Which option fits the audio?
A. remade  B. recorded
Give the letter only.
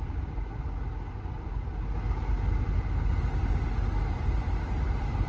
B